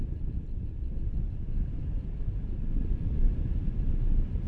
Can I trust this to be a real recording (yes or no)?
yes